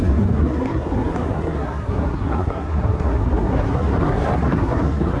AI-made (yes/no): yes